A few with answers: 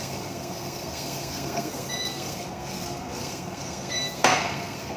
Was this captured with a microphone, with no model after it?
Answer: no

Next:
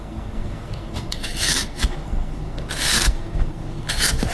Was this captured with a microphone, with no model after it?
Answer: no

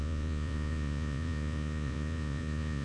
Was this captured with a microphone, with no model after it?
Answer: no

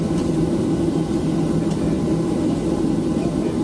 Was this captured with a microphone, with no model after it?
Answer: yes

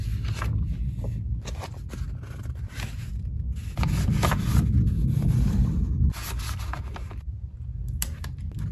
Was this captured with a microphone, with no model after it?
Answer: yes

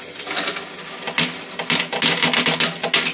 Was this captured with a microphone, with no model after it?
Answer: yes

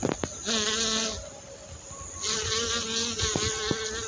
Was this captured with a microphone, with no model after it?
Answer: yes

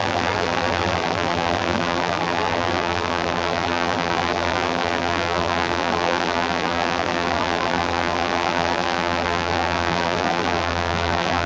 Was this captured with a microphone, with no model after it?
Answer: no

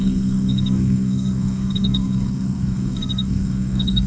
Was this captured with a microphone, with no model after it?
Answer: no